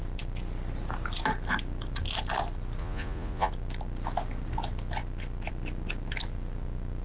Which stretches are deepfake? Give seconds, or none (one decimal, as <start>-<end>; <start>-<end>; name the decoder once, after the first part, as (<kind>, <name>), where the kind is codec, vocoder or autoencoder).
2.8-3.5 (vocoder, Vocos)